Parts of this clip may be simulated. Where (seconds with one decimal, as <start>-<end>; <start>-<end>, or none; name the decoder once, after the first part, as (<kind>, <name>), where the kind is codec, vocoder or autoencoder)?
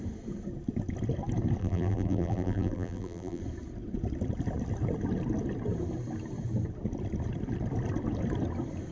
1.6-3.4 (vocoder, BigVGAN v2)